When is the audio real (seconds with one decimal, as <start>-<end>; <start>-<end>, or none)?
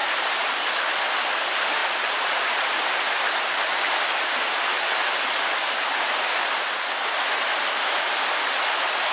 0.0-1.8; 6.9-9.1